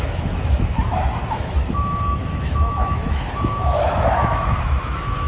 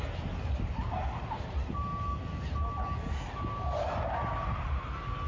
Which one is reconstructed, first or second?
first